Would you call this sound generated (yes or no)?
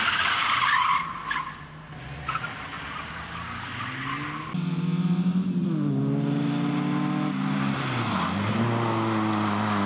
no